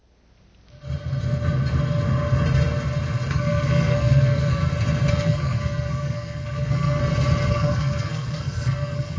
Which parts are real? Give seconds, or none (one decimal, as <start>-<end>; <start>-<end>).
0.0-3.3; 4.6-5.1; 7.0-7.5